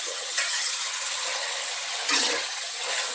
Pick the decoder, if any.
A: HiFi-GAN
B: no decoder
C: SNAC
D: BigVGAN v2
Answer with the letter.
A